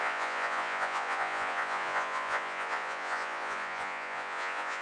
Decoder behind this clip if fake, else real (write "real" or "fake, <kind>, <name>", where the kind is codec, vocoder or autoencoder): fake, vocoder, Vocos